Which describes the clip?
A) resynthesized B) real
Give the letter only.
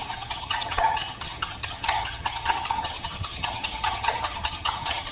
A